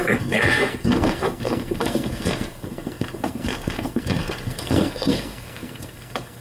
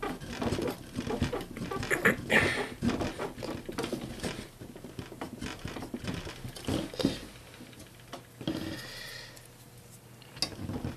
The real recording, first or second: second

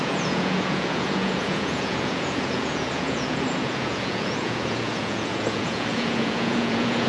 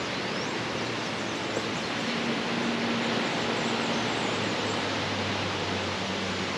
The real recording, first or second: second